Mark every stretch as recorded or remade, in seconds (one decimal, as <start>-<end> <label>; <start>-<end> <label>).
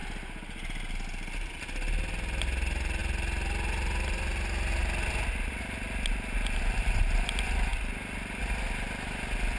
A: 0.0-9.6 recorded